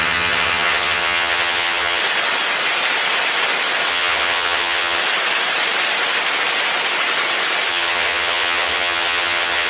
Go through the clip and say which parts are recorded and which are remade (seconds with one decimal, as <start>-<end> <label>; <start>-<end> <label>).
0.0-2.0 remade; 2.0-3.9 recorded; 3.9-5.0 remade; 5.0-7.7 recorded; 7.7-9.7 remade